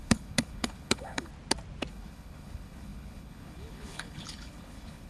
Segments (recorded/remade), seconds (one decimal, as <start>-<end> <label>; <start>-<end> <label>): 0.0-1.3 remade; 1.3-1.9 recorded; 1.9-5.1 remade